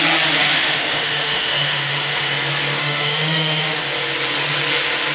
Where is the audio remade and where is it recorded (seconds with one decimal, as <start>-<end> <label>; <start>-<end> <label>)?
0.0-0.4 recorded; 0.4-2.3 remade; 2.3-2.8 recorded; 2.8-3.8 remade; 3.8-5.1 recorded